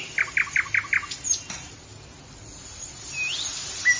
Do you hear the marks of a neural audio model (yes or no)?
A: no